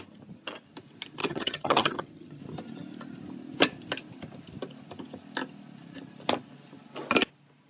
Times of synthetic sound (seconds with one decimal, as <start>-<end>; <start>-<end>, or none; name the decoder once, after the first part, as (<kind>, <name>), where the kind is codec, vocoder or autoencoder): 1.2-2.4 (vocoder, HiFi-GAN)